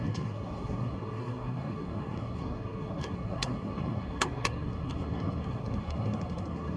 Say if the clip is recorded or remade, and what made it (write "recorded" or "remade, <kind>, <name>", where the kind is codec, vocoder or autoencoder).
remade, codec, SNAC